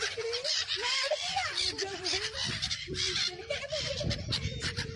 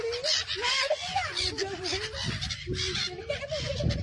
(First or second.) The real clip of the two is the second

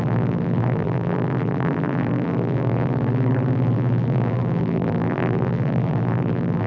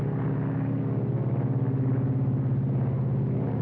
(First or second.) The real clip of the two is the second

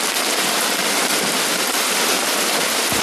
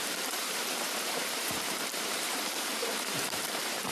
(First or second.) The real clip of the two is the first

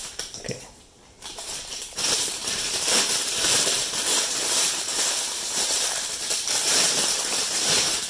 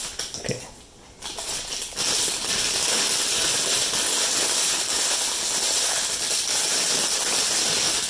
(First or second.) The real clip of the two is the second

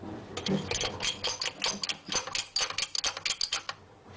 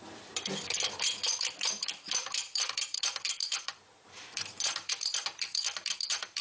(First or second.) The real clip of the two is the first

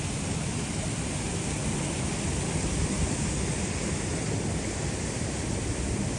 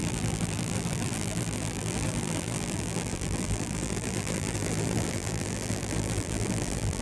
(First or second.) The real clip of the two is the first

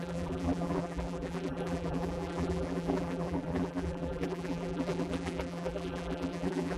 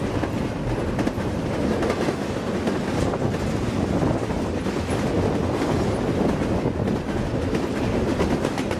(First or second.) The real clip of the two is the second